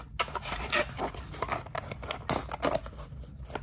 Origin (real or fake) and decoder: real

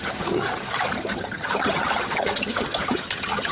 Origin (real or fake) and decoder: fake, vocoder, HiFi-GAN